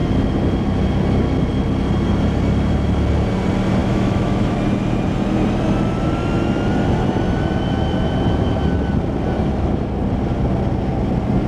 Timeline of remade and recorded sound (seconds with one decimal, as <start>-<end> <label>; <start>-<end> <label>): 0.0-3.8 recorded; 3.8-4.5 remade; 4.5-11.5 recorded

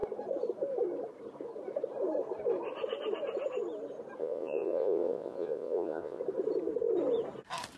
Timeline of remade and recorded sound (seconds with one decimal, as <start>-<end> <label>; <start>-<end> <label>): 0.0-4.2 recorded; 4.2-6.2 remade; 6.2-7.8 recorded

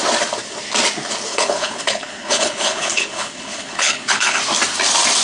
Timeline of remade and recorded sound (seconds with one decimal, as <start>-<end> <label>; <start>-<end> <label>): 0.0-1.3 recorded; 1.3-4.4 remade; 4.4-5.2 recorded

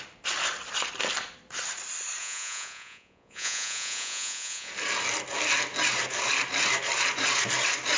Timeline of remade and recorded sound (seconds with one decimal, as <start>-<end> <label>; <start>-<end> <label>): 0.0-2.2 recorded; 2.2-4.7 remade; 4.7-8.0 recorded

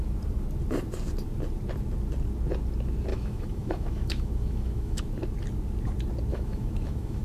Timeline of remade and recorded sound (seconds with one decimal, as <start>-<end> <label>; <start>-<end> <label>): 0.0-3.1 recorded; 3.1-5.0 remade; 5.0-6.3 recorded; 6.3-7.2 remade

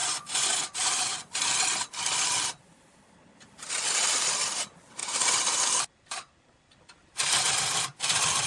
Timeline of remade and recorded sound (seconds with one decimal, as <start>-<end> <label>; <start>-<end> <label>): 0.0-1.3 remade; 1.3-8.5 recorded

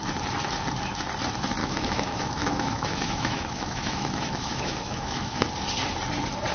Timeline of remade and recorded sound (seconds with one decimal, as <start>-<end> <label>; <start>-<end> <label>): 0.0-1.6 recorded; 1.6-5.5 remade; 5.5-6.5 recorded

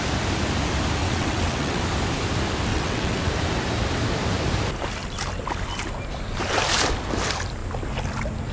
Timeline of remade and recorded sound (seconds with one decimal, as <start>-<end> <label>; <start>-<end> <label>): 0.0-1.0 recorded; 1.0-1.8 remade; 1.8-2.7 recorded; 2.7-3.3 remade; 3.3-8.5 recorded